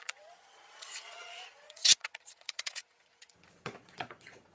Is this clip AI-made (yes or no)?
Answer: yes